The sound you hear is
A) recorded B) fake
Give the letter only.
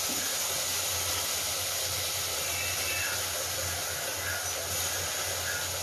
A